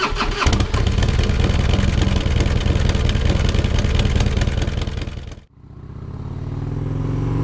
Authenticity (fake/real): real